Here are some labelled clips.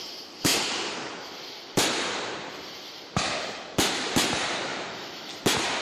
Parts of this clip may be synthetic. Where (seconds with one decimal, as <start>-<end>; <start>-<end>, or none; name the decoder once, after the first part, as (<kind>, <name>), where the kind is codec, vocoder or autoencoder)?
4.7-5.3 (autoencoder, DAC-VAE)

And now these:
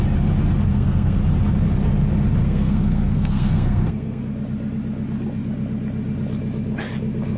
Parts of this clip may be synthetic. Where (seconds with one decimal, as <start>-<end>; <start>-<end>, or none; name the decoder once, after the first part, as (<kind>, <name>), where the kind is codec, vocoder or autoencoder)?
0.7-1.2 (codec, SNAC); 2.4-4.2

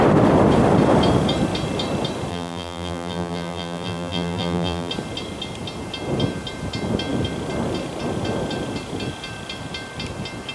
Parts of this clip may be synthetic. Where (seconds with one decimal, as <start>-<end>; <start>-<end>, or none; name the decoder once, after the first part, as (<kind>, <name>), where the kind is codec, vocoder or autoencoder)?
2.3-4.9 (vocoder, BigVGAN v2)

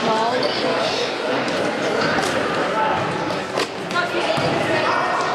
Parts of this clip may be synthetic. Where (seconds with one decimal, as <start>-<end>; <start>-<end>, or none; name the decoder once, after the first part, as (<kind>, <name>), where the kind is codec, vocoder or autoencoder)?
0.7-1.6 (codec, DAC); 2.6-3.5